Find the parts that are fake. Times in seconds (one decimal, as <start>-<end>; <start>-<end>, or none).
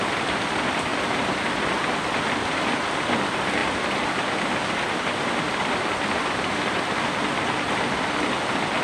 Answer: 0.9-2.8; 3.6-6.8